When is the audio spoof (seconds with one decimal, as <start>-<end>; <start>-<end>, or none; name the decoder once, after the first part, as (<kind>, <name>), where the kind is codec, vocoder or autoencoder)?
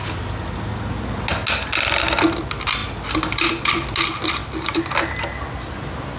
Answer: none